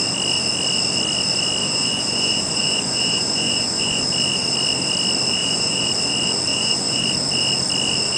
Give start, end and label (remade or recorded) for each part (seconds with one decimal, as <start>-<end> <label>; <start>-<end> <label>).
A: 0.0-1.6 recorded; 1.6-4.0 remade; 4.0-5.4 recorded; 5.4-5.9 remade; 5.9-6.5 recorded; 6.5-7.0 remade; 7.0-8.2 recorded